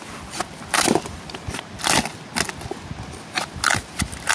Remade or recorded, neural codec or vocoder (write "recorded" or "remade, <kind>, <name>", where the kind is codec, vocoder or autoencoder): recorded